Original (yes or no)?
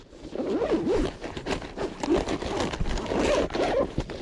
yes